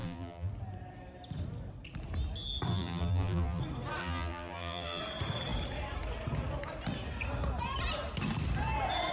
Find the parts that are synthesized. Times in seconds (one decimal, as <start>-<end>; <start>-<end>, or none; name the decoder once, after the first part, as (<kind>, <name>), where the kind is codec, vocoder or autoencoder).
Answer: 0.0-0.5 (vocoder, BigVGAN v2); 2.7-3.6; 4.0-5.0